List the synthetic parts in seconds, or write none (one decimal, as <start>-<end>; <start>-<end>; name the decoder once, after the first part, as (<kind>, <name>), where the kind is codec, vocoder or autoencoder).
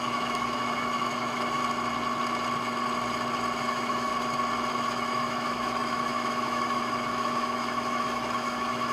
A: 0.0-1.6 (autoencoder, DAC-VAE); 3.6-4.1; 4.7-8.9